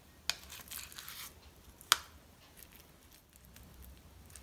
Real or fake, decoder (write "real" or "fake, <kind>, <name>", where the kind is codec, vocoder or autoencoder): real